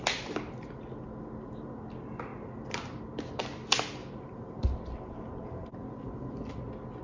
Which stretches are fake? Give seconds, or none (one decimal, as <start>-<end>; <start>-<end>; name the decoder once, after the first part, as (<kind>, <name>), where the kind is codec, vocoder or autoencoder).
4.0-4.6 (vocoder, BigVGAN v2)